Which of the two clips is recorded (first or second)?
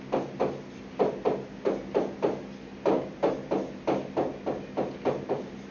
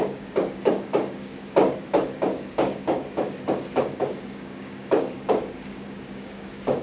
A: first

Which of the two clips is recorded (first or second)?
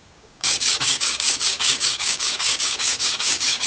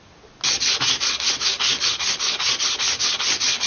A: second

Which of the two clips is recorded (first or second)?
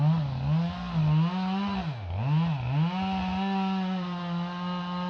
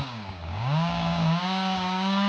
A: first